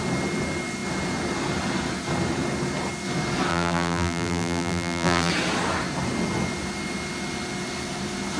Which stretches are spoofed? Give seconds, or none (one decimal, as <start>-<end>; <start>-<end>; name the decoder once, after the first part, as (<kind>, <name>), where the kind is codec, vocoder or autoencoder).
3.5-5.3 (vocoder, BigVGAN v2)